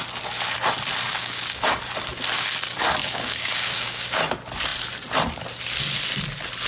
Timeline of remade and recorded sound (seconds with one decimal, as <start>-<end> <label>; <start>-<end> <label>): 0.0-1.1 recorded; 1.1-1.6 remade; 1.6-3.0 recorded; 3.0-4.2 remade; 4.2-6.7 recorded